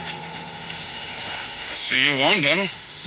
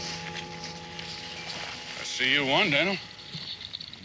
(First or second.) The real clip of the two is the second